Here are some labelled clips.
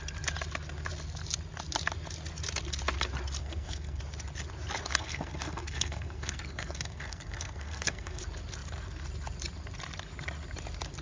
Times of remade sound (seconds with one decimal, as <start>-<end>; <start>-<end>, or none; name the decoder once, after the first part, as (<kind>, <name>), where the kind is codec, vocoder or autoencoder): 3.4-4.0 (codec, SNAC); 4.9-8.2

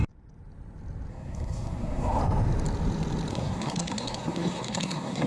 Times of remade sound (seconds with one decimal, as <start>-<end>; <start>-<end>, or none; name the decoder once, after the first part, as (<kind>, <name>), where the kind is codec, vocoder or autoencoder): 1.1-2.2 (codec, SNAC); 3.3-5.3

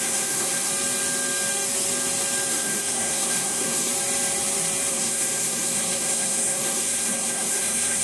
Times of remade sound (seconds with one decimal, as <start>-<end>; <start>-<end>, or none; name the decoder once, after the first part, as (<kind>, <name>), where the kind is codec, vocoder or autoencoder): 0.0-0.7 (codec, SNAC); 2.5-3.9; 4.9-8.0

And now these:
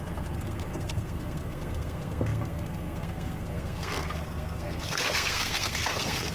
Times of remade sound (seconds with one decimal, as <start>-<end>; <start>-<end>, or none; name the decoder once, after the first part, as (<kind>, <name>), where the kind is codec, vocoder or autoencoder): 0.0-6.3 (codec, SNAC)

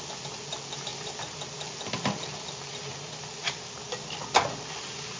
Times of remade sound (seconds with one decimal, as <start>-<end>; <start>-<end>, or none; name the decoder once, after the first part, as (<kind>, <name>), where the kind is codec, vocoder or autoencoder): none

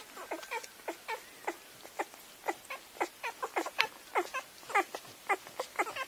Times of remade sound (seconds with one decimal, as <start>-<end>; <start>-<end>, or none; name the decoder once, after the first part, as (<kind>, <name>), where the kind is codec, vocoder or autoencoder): none

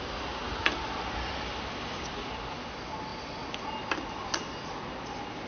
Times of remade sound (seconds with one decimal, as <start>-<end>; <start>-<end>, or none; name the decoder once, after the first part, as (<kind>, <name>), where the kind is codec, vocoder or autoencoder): none

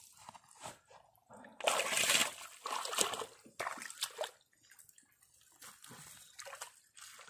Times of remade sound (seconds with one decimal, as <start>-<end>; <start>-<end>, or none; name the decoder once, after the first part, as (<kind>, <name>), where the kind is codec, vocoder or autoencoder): none